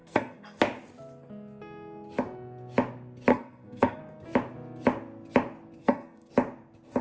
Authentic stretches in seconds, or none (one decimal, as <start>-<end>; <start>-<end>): 0.6-3.3; 4.0-5.8; 6.3-7.0